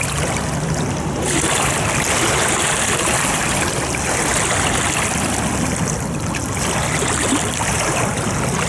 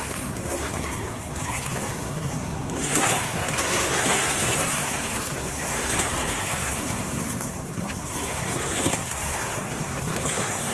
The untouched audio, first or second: first